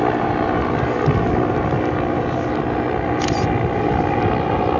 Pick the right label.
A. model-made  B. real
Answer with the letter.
B